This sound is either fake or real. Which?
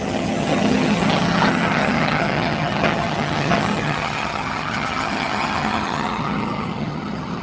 fake